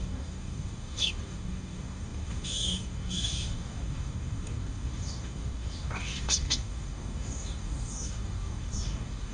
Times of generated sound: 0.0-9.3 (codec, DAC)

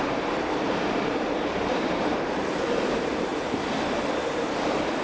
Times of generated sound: 0.0-3.3 (vocoder, BigVGAN v2); 4.2-5.0

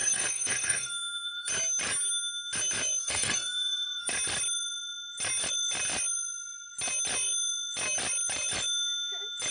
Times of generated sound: 0.0-1.5 (codec, SNAC); 3.0-4.1

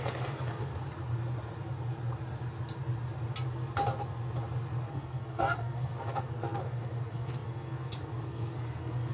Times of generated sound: 0.0-0.7 (codec, SNAC); 4.9-9.1

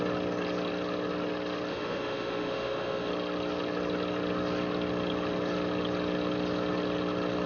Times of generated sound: 1.7-3.1 (autoencoder, DAC-VAE)

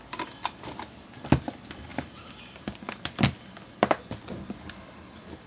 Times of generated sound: 0.0-5.5 (vocoder, BigVGAN v2)